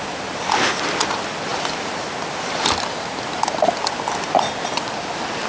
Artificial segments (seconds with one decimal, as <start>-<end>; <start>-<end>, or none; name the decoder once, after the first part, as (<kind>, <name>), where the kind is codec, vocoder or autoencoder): none